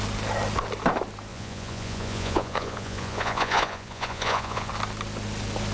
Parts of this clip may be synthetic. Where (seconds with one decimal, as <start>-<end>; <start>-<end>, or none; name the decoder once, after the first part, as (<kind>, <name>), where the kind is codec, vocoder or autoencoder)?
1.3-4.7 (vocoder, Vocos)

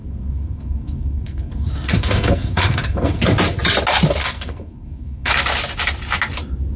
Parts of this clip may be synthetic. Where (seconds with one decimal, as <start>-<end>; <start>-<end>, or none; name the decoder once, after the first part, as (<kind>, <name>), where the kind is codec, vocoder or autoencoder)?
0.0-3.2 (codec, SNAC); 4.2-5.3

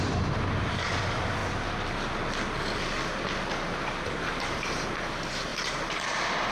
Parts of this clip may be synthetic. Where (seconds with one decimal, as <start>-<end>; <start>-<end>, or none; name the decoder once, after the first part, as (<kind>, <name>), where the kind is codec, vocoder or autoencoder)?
5.5-6.5 (vocoder, BigVGAN v2)

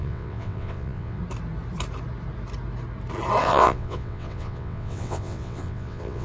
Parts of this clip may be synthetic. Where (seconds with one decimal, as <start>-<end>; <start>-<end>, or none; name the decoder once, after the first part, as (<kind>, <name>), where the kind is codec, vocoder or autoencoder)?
0.0-1.2 (vocoder, WaveNeXt); 3.4-6.2

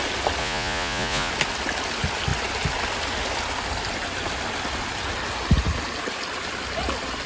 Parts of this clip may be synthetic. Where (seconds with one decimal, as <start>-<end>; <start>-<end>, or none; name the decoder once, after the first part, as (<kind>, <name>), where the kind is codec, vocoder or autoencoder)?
0.4-1.3 (vocoder, Vocos)